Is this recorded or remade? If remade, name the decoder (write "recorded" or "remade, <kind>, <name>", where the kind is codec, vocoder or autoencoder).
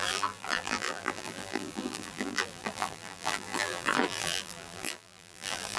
remade, vocoder, BigVGAN v2